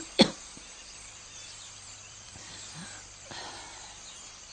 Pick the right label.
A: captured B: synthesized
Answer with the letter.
B